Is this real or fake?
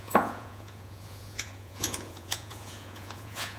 fake